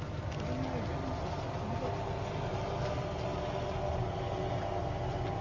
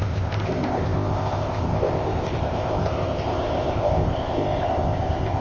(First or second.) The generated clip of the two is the second